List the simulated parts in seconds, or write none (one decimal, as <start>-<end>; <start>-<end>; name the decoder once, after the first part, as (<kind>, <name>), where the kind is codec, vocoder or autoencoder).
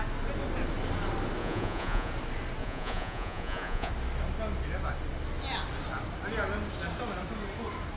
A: 1.4-2.1 (vocoder, Vocos); 2.6-3.9